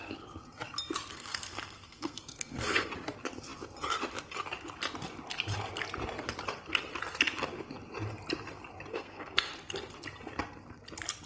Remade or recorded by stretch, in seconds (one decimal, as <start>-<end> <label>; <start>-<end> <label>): 0.0-1.1 recorded; 1.1-2.9 remade; 2.9-8.9 recorded; 8.9-9.5 remade; 9.5-11.3 recorded